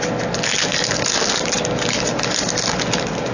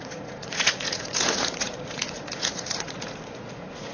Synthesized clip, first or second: second